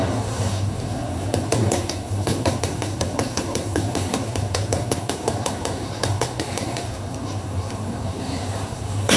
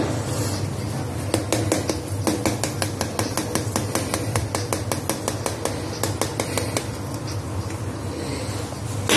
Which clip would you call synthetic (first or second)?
first